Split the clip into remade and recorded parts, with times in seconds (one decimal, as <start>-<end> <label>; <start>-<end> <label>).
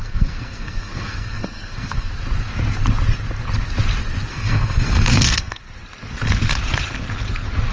0.0-2.1 remade; 2.1-4.3 recorded; 4.3-5.6 remade; 5.6-7.7 recorded